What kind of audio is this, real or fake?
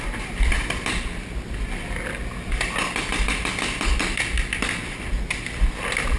real